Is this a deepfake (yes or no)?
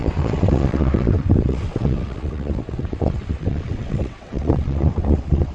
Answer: yes